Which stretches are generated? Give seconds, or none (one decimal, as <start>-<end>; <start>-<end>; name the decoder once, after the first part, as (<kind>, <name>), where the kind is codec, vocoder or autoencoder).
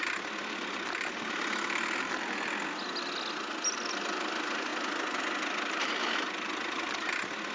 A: none